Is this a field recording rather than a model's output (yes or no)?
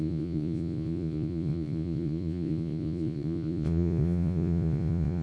no